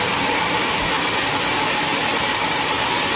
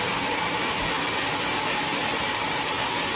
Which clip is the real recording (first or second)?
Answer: second